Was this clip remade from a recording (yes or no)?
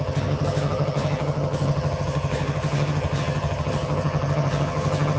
yes